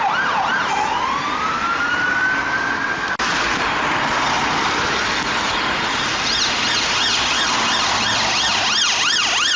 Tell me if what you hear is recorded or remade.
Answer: recorded